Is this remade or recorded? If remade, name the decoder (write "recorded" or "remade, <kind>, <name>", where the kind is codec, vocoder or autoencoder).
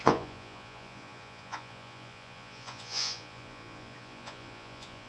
remade, vocoder, Vocos